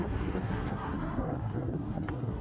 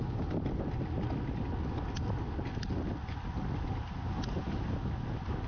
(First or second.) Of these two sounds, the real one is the second